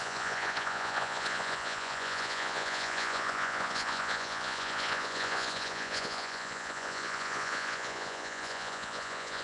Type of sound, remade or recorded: remade